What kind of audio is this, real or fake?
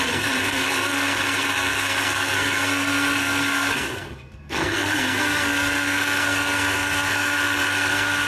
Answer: fake